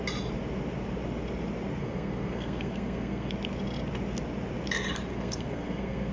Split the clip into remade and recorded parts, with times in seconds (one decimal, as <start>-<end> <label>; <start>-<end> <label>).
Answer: 0.0-1.8 recorded; 1.8-3.3 remade; 3.3-5.1 recorded; 5.1-6.1 remade